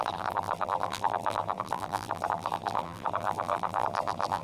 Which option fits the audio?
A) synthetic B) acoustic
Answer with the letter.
A